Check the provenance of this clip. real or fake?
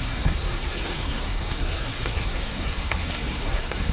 fake